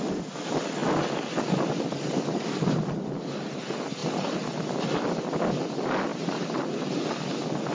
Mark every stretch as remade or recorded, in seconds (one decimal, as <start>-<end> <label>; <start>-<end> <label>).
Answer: 0.0-7.7 recorded